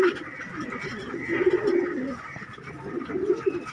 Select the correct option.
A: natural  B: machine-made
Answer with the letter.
A